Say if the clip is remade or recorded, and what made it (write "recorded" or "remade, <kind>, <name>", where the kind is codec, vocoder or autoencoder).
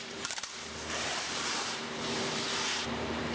remade, vocoder, BigVGAN v2